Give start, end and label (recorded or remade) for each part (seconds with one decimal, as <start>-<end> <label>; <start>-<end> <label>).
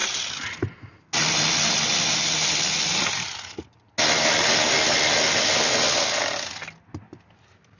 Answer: 0.0-7.8 recorded